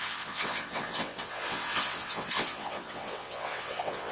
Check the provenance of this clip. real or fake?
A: fake